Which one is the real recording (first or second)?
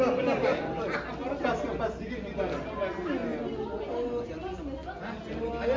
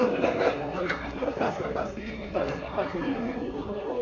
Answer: first